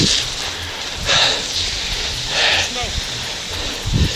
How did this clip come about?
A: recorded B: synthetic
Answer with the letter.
A